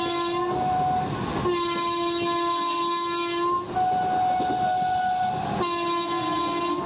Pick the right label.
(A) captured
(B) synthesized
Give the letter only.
A